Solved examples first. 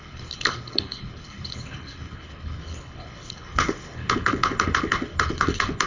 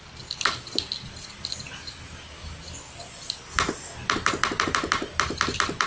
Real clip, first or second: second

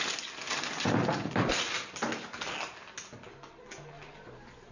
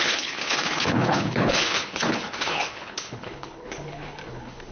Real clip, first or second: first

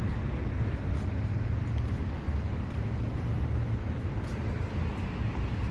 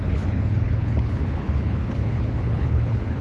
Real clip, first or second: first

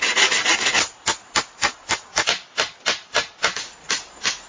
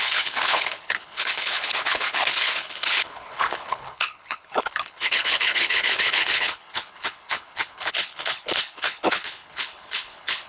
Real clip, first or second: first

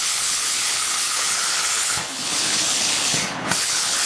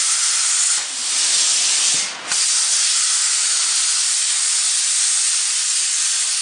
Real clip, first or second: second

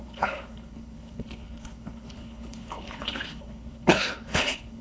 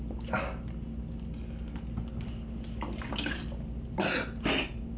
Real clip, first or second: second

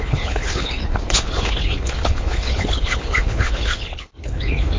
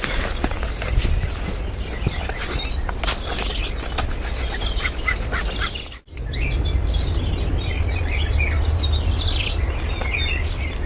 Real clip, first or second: second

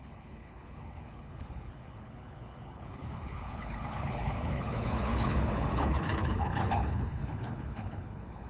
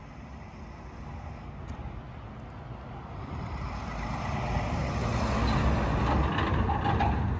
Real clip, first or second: second